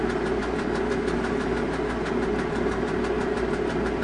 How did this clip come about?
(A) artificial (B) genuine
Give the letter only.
B